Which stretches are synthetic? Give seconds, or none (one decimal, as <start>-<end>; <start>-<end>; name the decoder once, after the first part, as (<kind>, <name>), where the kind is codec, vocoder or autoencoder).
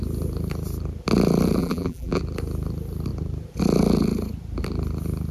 1.6-2.2 (vocoder, BigVGAN v2)